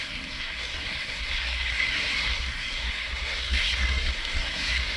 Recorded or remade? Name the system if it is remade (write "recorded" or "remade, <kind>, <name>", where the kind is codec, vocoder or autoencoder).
remade, codec, SNAC